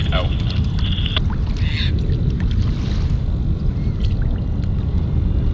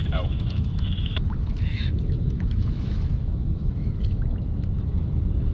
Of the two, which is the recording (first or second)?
first